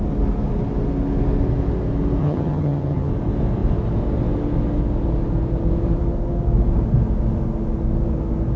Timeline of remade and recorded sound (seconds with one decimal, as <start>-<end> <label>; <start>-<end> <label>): 0.0-2.2 recorded; 2.2-3.1 remade; 3.1-8.6 recorded